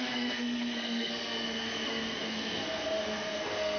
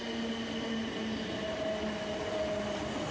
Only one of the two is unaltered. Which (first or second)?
second